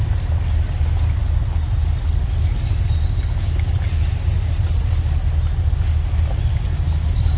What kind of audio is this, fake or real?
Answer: real